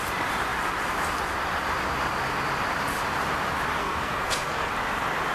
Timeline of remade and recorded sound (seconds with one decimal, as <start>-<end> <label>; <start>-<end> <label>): 0.0-3.8 recorded; 3.8-4.7 remade; 4.7-5.3 recorded